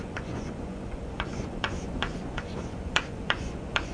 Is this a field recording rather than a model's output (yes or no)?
no